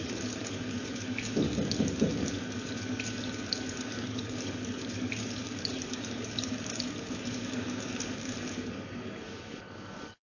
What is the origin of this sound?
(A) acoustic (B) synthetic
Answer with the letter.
B